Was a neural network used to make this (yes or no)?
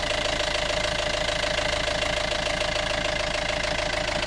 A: no